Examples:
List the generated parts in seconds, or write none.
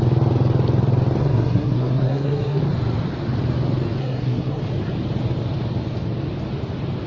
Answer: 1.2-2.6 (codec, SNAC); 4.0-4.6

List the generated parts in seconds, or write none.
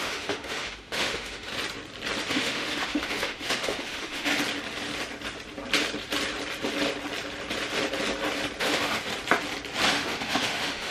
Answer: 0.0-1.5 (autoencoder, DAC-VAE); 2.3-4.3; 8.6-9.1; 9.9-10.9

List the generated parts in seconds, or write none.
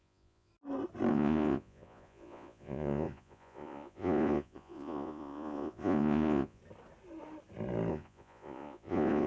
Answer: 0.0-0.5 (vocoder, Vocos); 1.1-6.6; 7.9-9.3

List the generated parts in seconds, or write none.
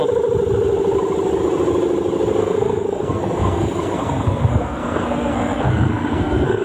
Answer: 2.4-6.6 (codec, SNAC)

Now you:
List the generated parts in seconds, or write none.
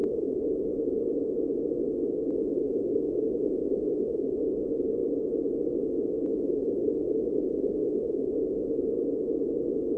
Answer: 0.0-4.5 (autoencoder, DAC-VAE); 7.8-9.6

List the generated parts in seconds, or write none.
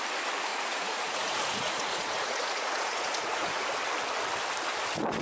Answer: 0.5-3.6 (vocoder, Vocos)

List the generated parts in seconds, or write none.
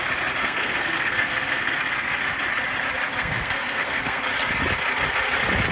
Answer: 0.4-2.2 (codec, SNAC); 3.2-4.2